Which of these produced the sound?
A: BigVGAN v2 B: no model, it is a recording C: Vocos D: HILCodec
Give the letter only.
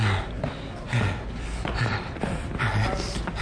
B